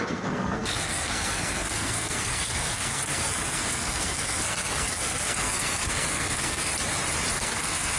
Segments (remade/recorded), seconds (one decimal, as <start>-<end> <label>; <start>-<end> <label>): 0.0-6.7 remade; 6.7-7.3 recorded; 7.3-8.0 remade